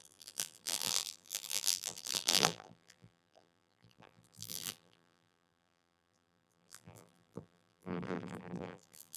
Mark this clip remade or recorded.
remade